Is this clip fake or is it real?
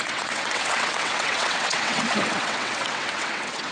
fake